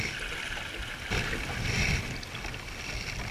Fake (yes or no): no